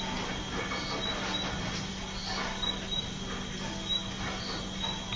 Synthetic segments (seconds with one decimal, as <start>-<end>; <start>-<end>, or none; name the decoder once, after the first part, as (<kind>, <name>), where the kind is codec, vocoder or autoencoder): none